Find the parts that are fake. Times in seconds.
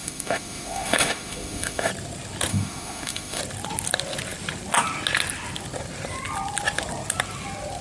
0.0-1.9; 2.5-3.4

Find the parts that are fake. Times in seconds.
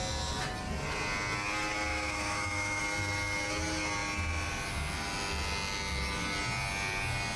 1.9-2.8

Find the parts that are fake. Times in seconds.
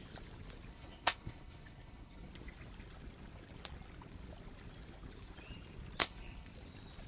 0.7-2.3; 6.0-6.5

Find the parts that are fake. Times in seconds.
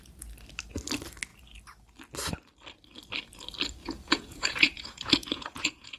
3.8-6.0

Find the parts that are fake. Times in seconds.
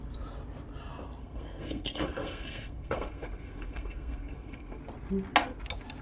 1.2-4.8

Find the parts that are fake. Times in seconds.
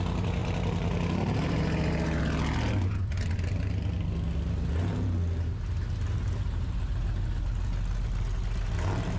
0.4-2.2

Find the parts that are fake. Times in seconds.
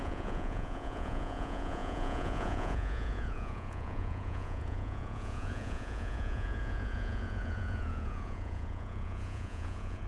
0.0-10.1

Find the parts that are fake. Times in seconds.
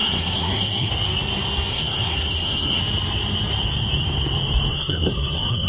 0.0-0.9; 1.7-2.8; 4.7-5.7